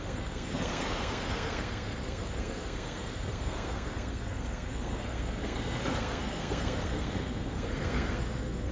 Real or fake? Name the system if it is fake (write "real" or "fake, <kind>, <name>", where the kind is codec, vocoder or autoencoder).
fake, codec, SNAC